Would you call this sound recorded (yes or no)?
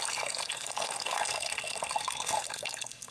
no